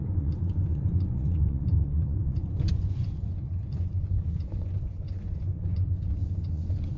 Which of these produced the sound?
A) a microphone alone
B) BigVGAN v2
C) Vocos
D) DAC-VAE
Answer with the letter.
C